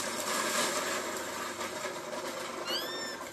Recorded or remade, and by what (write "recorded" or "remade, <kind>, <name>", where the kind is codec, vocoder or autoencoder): recorded